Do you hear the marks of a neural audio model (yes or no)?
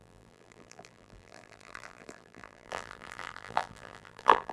yes